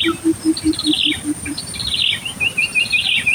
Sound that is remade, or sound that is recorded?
recorded